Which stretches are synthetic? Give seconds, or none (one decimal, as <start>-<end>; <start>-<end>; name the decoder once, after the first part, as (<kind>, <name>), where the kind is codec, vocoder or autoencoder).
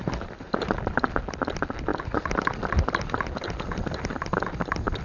none